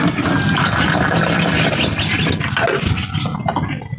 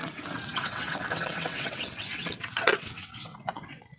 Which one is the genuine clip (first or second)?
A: first